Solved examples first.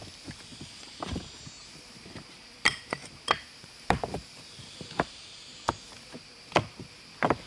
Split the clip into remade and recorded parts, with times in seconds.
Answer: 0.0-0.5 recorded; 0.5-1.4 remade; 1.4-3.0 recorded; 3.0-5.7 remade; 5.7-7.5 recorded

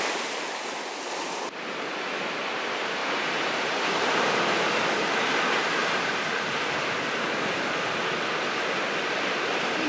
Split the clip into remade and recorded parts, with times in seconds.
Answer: 0.0-3.0 recorded; 3.0-4.6 remade; 4.6-5.8 recorded; 5.8-6.3 remade; 6.3-9.9 recorded

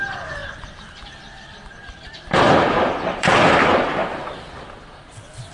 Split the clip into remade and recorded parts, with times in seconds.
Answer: 0.0-0.4 recorded; 0.4-3.6 remade; 3.6-5.5 recorded

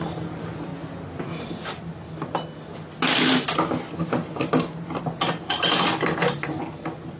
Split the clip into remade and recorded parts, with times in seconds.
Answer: 0.0-7.2 recorded

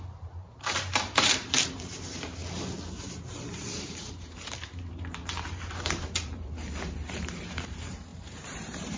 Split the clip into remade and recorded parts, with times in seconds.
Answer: 0.0-2.4 remade; 2.4-2.9 recorded; 2.9-9.0 remade